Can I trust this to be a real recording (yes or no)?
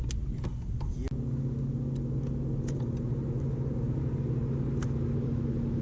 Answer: yes